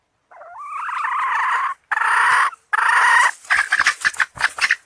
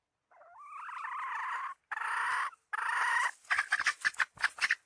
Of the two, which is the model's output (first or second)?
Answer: second